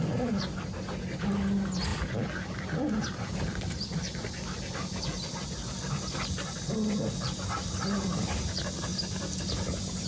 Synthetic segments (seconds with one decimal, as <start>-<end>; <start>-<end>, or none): 1.9-6.6

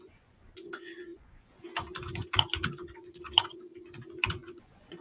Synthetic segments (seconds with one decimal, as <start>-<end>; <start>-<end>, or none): 0.0-5.0

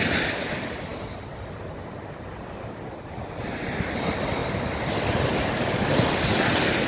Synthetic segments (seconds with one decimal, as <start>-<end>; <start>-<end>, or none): none